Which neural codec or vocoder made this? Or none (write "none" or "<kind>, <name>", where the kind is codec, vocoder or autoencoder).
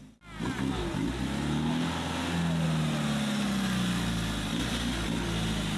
none